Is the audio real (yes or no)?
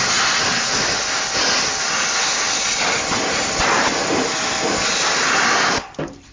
yes